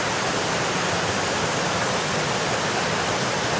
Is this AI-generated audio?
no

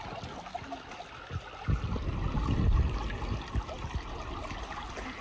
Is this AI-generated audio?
no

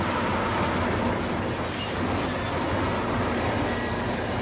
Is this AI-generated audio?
no